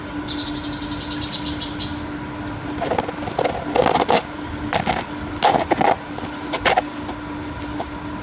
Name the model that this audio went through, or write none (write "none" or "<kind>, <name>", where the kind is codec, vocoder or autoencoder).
none